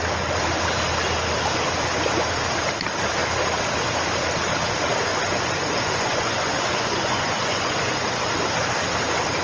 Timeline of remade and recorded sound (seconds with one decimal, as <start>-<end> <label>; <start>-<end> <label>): 0.0-5.1 recorded; 5.1-8.3 remade; 8.3-9.4 recorded